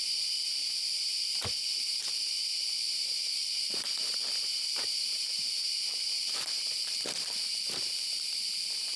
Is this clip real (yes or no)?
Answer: no